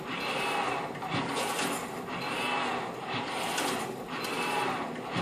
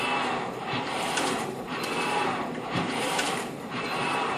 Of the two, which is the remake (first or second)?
second